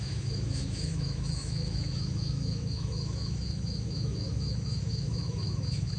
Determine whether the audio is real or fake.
fake